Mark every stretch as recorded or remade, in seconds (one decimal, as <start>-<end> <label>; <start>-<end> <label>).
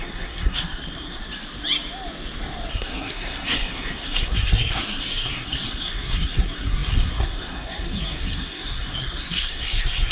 0.0-1.2 remade; 1.2-2.7 recorded; 2.7-10.1 remade